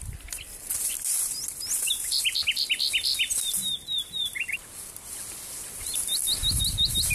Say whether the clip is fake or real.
real